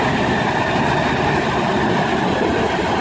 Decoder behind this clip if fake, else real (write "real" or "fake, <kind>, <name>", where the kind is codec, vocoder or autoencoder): real